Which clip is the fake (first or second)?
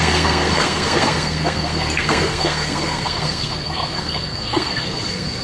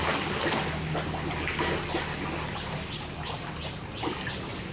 first